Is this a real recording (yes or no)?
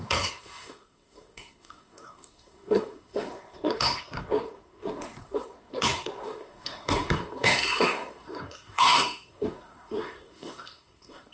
no